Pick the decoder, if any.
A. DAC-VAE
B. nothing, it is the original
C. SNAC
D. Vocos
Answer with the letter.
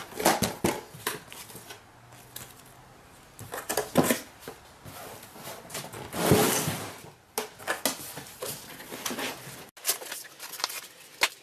B